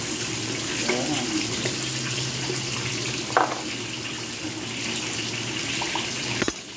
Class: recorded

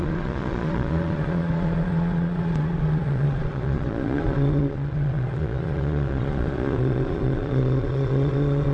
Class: remade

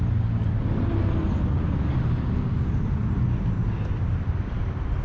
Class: recorded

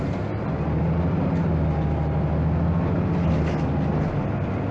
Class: recorded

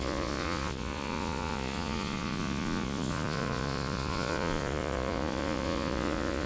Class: remade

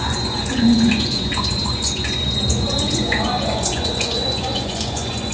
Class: remade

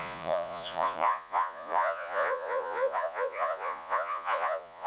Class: remade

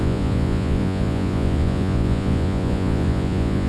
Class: remade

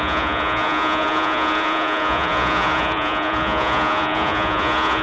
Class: remade